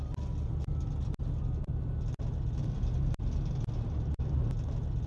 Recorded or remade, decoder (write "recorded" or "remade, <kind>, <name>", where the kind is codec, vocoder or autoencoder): recorded